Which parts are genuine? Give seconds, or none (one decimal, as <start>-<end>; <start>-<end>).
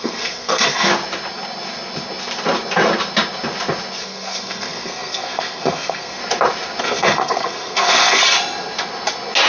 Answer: 0.9-4.0; 6.2-6.8; 8.2-9.5